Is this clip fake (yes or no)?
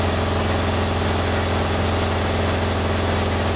no